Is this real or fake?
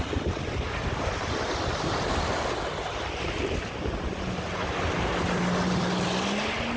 real